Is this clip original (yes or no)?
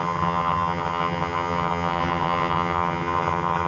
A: no